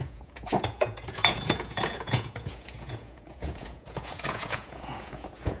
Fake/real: fake